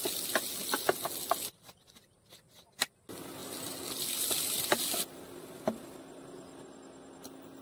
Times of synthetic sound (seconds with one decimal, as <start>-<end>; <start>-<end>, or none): none